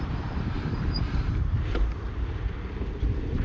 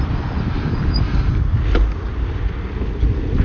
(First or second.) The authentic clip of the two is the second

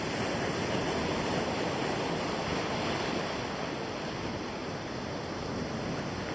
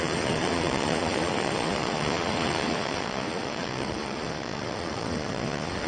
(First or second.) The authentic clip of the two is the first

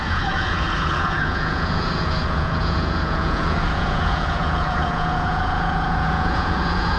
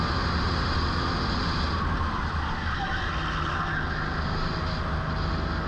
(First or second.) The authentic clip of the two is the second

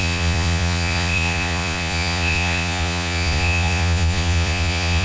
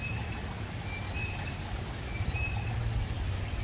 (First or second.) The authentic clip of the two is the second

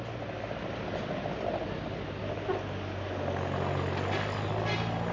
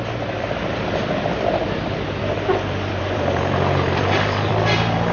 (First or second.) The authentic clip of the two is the first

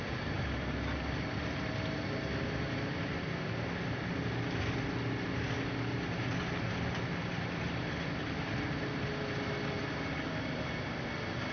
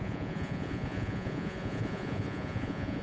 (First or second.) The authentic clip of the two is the first